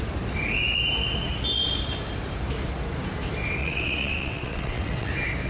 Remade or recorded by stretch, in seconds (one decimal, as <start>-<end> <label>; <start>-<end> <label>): 0.0-3.6 recorded; 3.6-5.1 remade; 5.1-5.5 recorded